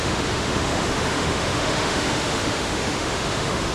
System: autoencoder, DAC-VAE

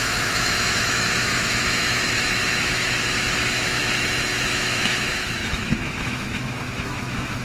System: autoencoder, DAC-VAE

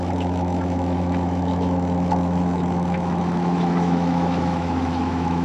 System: autoencoder, DAC-VAE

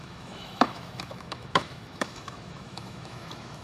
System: autoencoder, DAC-VAE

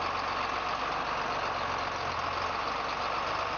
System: none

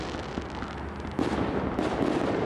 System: none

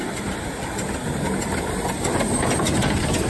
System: none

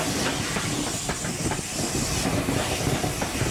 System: none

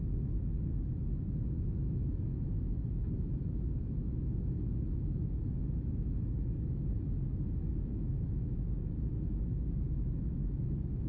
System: autoencoder, DAC-VAE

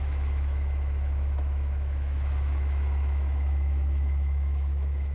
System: autoencoder, DAC-VAE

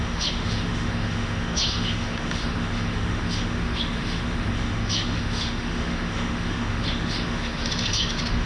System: autoencoder, DAC-VAE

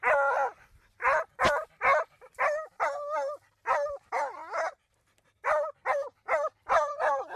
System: none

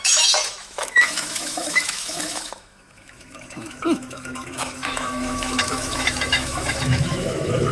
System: autoencoder, DAC-VAE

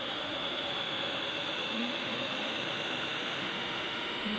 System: autoencoder, DAC-VAE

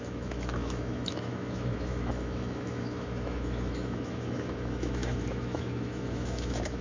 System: autoencoder, DAC-VAE